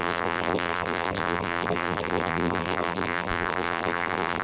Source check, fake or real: fake